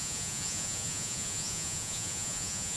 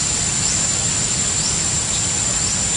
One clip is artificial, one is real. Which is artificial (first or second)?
first